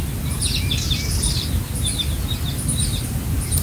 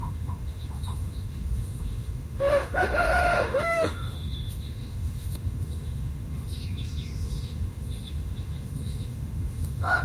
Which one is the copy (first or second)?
second